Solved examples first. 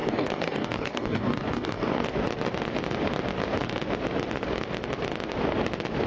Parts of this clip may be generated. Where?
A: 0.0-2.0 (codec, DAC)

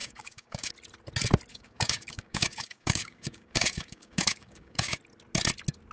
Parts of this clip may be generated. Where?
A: 0.0-0.7 (codec, DAC); 1.5-5.0

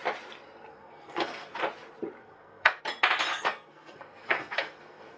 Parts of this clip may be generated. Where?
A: 0.7-1.6 (codec, SNAC); 2.2-2.8; 3.3-5.2